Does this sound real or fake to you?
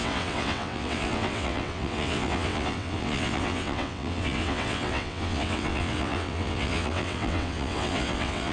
fake